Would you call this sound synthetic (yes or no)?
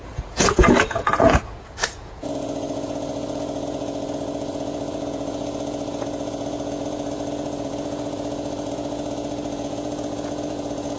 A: yes